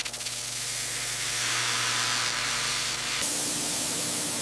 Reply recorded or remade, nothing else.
recorded